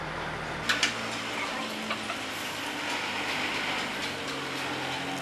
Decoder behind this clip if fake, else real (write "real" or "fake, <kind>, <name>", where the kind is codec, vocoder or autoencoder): real